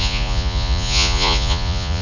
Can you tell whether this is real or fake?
fake